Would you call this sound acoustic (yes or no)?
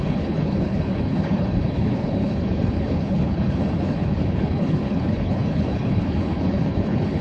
no